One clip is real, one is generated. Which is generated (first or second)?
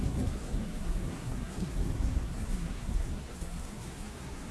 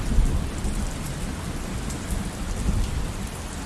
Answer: first